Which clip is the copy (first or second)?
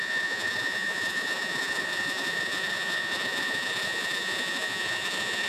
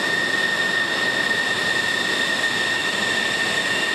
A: first